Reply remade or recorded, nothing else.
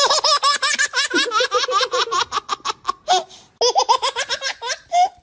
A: recorded